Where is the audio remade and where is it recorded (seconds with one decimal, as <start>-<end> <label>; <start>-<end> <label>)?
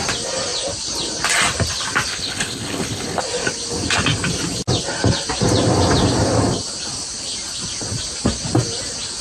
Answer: 0.0-2.1 recorded; 2.1-3.2 remade; 3.2-9.2 recorded